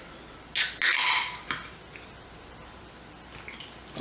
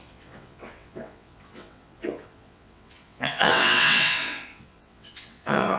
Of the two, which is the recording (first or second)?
first